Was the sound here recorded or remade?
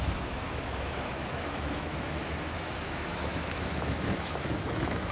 remade